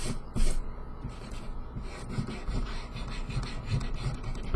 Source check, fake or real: real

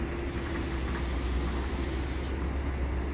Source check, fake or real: real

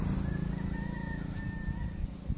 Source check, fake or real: real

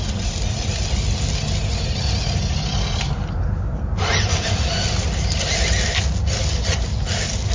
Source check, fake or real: real